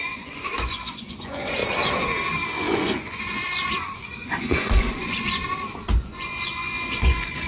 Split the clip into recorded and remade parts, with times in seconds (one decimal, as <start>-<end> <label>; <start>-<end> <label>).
0.0-1.6 remade; 1.6-2.5 recorded; 2.5-5.4 remade; 5.4-6.0 recorded; 6.0-7.5 remade